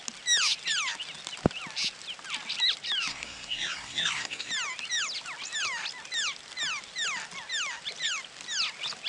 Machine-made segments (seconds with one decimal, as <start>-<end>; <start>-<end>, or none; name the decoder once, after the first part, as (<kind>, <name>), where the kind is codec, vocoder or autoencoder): 3.1-4.5 (codec, SNAC)